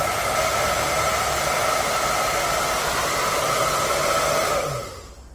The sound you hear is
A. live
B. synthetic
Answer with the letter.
A